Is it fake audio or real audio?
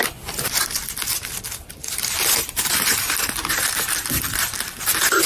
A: fake